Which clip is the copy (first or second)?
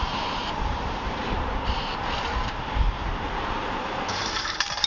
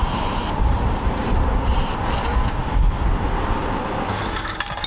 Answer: first